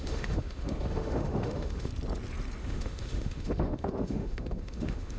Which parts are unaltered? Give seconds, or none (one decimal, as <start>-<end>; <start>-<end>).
1.9-2.6